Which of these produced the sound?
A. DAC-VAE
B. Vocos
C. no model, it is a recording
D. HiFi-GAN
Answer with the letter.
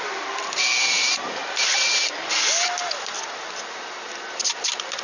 C